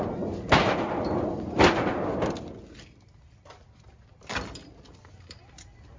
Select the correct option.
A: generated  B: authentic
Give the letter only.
B